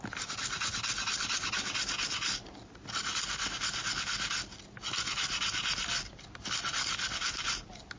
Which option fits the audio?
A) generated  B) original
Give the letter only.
B